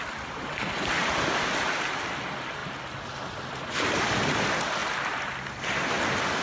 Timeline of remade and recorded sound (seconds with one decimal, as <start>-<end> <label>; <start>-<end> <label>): 0.0-6.4 recorded